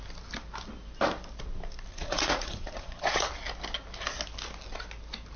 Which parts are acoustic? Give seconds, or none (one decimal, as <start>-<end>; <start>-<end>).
0.0-1.9; 3.3-5.4